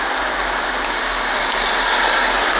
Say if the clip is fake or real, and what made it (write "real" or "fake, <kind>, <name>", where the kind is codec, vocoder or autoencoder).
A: real